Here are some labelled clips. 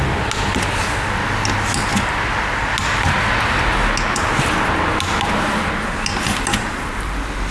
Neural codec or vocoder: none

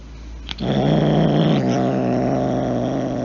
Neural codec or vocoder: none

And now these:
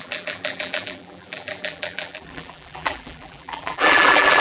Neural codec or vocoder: vocoder, BigVGAN v2